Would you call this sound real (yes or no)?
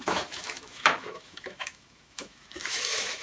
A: no